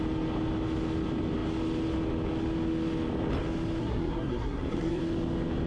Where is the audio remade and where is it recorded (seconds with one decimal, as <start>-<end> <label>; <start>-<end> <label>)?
0.0-3.8 recorded; 3.8-5.0 remade; 5.0-5.7 recorded